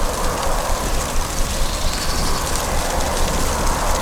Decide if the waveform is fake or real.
real